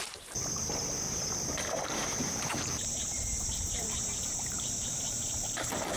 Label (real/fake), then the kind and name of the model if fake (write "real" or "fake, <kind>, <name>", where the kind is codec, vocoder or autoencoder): fake, vocoder, BigVGAN v2